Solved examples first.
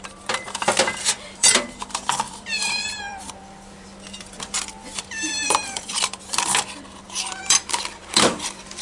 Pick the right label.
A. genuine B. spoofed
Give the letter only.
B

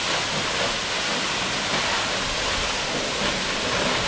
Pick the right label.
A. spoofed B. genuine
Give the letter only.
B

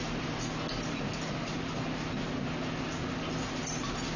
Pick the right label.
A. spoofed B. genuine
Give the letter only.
B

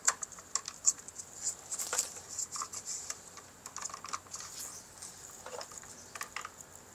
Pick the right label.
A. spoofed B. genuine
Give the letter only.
B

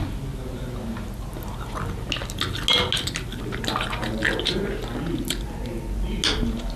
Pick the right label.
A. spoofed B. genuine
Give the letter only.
B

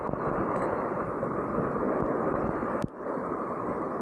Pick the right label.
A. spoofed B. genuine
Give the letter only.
B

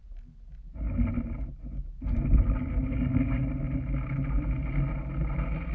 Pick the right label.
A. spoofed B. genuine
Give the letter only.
B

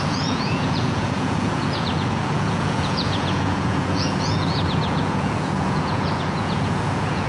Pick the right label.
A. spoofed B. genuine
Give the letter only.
A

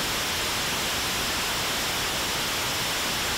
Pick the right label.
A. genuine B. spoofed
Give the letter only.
A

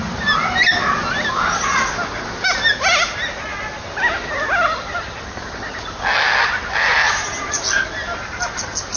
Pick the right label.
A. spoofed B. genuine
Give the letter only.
B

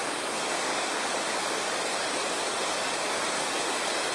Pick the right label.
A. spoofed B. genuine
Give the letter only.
A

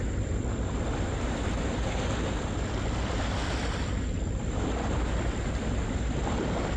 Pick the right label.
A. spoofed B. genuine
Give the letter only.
B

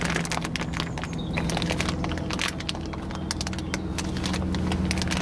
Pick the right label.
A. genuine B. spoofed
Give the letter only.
A